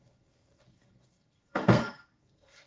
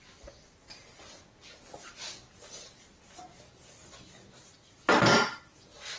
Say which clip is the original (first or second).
second